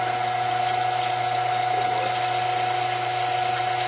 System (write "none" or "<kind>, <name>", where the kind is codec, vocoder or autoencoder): none